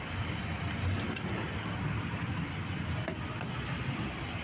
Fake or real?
real